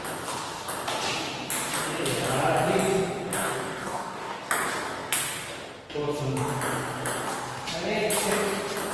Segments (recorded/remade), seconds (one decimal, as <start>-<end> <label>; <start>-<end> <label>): 0.0-3.3 recorded; 3.3-4.5 remade; 4.5-8.9 recorded